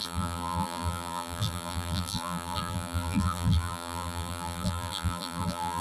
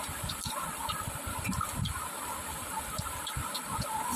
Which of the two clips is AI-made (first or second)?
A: first